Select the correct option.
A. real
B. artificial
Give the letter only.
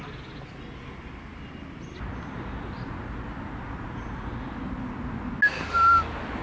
A